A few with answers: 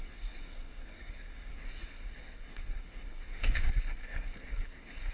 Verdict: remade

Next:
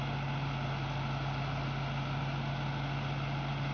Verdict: recorded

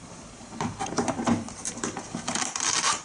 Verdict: remade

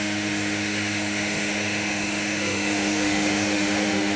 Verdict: remade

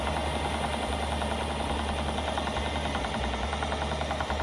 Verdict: recorded